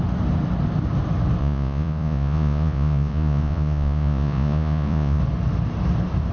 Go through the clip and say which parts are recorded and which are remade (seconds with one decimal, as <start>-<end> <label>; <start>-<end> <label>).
0.0-1.4 recorded; 1.4-5.2 remade; 5.2-6.3 recorded